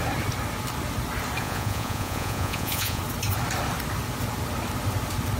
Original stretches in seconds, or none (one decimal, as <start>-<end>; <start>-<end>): 0.0-1.4; 3.0-5.4